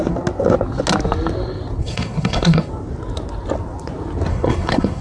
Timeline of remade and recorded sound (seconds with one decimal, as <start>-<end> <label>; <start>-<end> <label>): 0.0-1.8 recorded; 1.8-2.7 remade; 2.7-4.3 recorded; 4.3-5.0 remade